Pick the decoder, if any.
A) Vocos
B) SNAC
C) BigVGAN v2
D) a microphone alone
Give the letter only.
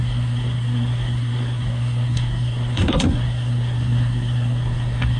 B